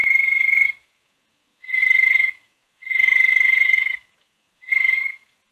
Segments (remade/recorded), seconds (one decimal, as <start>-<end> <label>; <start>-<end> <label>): 0.0-5.5 recorded